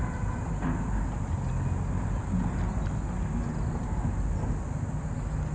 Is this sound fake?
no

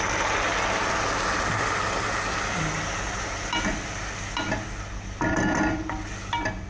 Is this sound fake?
no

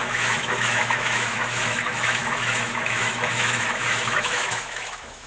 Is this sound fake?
yes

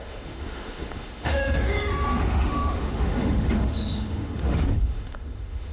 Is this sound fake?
yes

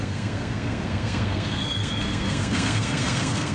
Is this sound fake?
yes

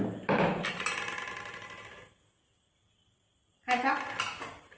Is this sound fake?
no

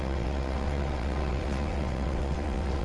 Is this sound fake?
yes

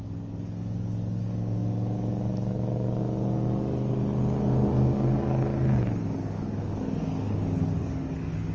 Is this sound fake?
yes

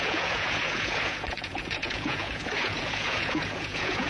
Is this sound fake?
yes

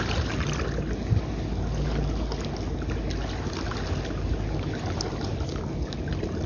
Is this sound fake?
no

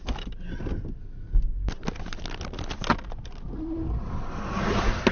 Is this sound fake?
no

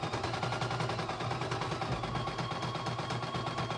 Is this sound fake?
no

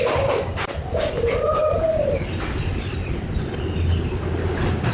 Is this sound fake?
no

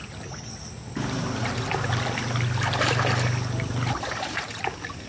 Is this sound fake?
no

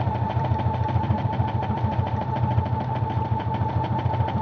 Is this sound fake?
yes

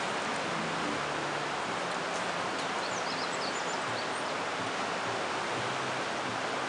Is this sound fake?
no